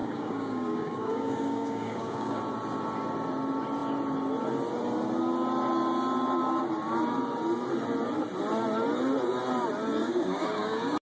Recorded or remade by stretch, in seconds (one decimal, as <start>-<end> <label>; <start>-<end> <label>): 0.0-2.4 remade; 2.4-10.0 recorded; 10.0-11.0 remade